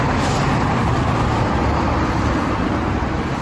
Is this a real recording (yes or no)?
yes